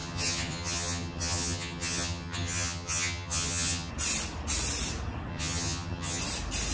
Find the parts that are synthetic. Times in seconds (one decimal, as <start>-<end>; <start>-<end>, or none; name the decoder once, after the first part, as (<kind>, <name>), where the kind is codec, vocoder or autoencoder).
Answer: 0.0-3.9 (vocoder, HiFi-GAN); 5.3-6.2